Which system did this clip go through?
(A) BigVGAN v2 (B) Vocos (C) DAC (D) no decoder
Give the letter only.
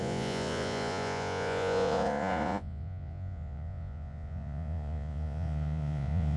B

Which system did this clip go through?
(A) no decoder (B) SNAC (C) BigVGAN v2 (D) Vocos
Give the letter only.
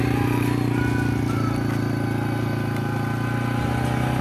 A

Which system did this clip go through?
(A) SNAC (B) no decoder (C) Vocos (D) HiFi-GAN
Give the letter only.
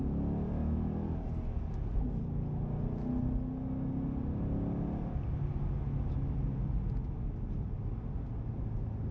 B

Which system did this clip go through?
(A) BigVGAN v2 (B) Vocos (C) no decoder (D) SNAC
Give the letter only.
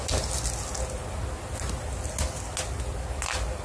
C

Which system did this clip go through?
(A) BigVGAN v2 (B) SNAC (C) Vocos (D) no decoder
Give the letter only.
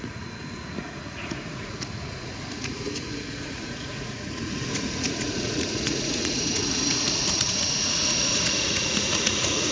C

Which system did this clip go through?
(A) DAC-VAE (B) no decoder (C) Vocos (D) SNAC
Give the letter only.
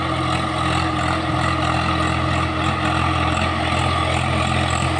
B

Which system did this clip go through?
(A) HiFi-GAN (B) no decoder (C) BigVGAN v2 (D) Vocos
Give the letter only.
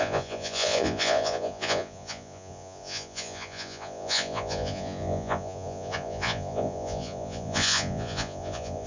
D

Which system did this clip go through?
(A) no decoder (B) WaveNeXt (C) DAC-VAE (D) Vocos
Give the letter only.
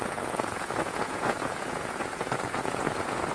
D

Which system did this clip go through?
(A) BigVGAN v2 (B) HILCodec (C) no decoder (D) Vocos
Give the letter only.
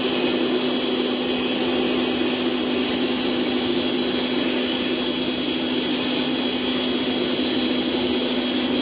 C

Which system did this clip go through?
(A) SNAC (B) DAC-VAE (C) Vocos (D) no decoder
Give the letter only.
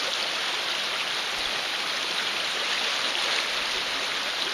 D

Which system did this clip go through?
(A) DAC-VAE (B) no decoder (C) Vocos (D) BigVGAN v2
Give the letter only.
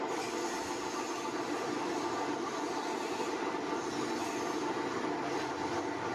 B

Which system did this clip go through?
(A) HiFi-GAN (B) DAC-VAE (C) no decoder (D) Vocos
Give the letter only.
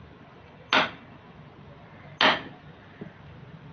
C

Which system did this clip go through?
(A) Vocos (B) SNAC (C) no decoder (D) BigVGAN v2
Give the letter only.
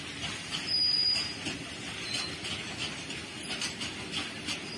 C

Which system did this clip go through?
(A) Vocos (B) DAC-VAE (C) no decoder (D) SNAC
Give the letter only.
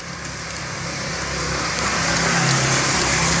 C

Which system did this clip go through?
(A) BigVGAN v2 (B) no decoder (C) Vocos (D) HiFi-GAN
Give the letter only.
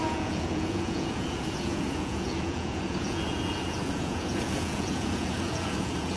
C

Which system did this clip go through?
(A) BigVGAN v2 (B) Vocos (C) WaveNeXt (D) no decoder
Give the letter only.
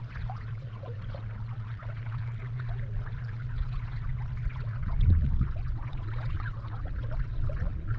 B